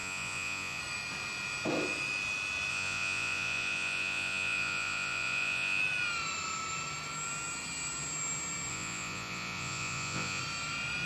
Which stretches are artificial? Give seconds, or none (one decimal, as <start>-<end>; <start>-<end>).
0.0-0.8; 2.7-5.8; 8.7-10.4